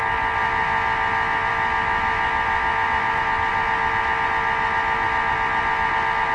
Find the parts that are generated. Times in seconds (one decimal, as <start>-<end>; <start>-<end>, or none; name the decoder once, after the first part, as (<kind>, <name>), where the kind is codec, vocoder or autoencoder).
none